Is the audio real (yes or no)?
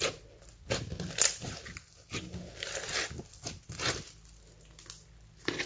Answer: yes